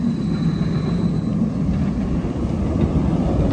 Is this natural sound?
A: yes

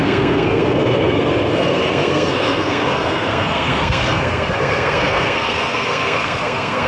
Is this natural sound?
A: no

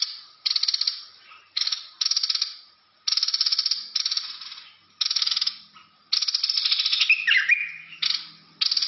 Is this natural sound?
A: yes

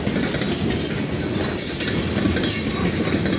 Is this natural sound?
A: yes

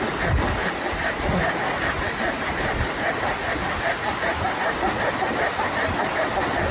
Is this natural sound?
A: yes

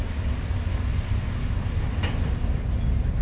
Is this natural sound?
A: yes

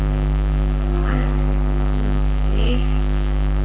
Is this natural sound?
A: no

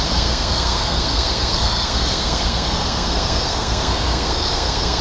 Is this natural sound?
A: no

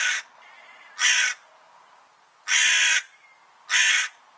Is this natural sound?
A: yes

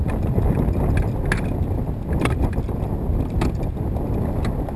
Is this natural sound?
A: yes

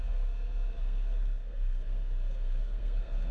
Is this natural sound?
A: no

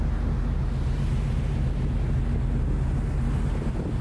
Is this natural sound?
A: yes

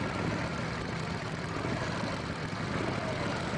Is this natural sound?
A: yes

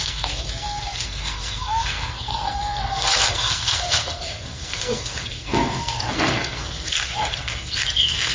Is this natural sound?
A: no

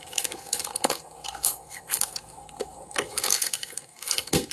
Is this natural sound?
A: no